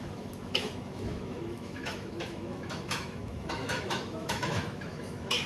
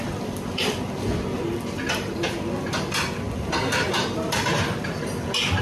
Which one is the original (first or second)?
second